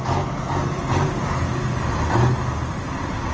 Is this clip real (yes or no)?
yes